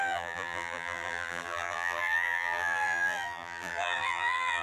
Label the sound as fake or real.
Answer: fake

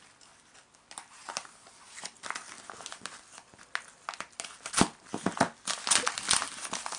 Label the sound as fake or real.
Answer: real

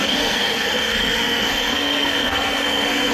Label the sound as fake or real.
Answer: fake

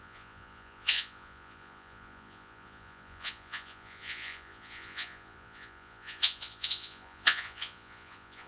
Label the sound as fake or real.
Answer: fake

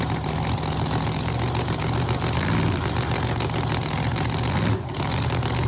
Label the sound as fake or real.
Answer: real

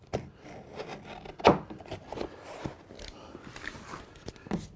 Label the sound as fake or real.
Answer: real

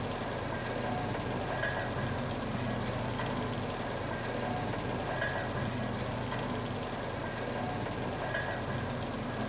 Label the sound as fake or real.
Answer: real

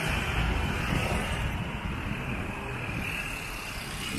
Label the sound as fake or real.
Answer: real